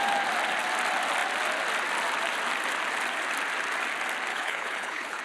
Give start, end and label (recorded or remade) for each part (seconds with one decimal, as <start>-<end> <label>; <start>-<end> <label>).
0.0-4.3 recorded; 4.3-5.2 remade